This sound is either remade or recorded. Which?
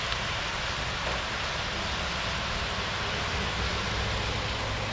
recorded